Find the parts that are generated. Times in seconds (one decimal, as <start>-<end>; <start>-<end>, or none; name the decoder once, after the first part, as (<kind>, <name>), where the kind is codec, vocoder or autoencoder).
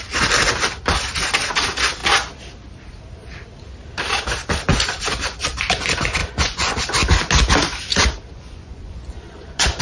6.2-6.8 (vocoder, Vocos); 8.3-9.8